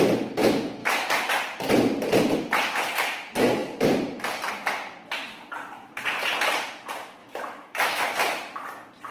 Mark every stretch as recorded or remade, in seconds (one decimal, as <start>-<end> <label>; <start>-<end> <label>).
0.0-0.8 recorded; 0.8-1.3 remade; 1.3-7.2 recorded; 7.2-8.0 remade; 8.0-9.1 recorded